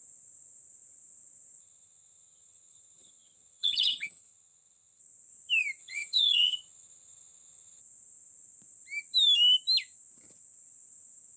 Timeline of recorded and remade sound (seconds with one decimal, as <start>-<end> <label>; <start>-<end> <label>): 0.0-1.6 recorded; 1.6-5.0 remade; 5.0-5.8 recorded; 5.8-7.8 remade; 7.8-11.4 recorded